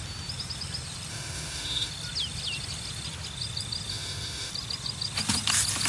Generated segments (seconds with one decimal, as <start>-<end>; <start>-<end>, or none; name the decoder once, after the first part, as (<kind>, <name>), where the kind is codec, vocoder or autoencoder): 1.1-1.9 (autoencoder, DAC-VAE); 3.9-4.5